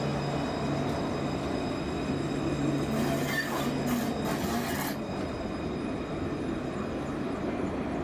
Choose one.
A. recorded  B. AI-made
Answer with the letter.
A